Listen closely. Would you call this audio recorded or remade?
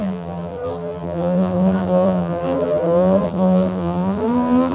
remade